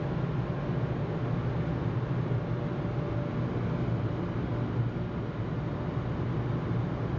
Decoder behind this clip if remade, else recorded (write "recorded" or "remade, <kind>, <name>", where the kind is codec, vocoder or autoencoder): recorded